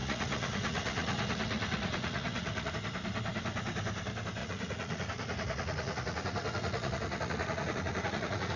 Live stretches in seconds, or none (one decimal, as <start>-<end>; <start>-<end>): 2.7-4.4